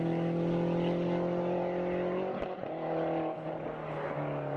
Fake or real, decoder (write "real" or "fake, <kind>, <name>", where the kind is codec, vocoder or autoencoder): real